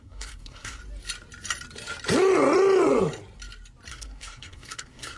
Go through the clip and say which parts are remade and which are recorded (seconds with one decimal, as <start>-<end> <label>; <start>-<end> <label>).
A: 0.0-0.8 remade; 0.8-3.9 recorded; 3.9-5.2 remade